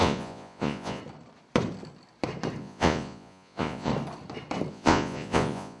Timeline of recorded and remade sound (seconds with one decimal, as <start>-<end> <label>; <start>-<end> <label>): 0.0-1.0 remade; 1.0-2.6 recorded; 2.6-3.9 remade; 3.9-4.7 recorded; 4.7-5.8 remade